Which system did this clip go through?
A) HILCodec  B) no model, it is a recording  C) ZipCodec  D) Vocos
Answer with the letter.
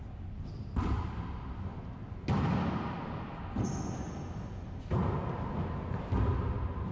B